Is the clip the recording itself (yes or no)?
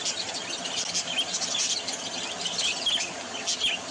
yes